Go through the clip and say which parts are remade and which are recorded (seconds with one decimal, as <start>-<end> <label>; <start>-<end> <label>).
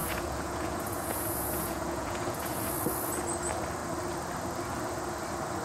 0.0-2.7 remade; 2.7-5.6 recorded